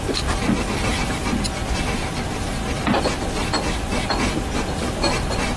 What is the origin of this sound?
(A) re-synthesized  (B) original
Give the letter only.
B